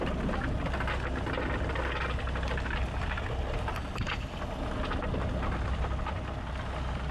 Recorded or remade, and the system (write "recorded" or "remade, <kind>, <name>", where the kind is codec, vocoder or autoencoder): recorded